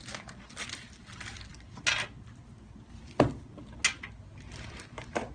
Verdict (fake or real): real